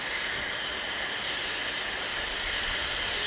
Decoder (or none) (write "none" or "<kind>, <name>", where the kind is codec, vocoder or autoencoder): none